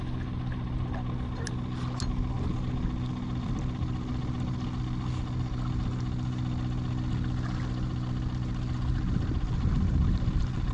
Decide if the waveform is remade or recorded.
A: recorded